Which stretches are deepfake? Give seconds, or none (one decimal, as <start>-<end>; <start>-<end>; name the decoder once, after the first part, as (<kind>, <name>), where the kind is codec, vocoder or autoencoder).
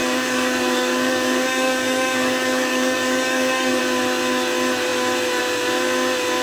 0.0-3.8 (codec, DAC)